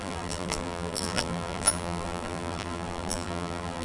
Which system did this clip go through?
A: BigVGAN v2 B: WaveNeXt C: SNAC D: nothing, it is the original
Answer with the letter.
A